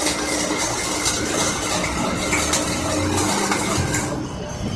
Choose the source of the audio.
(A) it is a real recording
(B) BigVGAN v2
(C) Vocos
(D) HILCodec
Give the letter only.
A